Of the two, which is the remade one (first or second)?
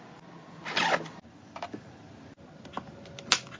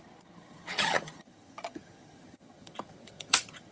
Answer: second